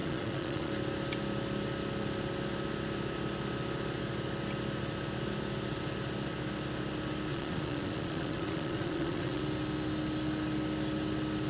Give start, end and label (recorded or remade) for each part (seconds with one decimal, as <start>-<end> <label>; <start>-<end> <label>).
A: 0.0-0.7 remade; 0.7-7.3 recorded; 7.3-9.4 remade; 9.4-11.5 recorded